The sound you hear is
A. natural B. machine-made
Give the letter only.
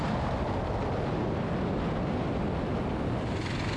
A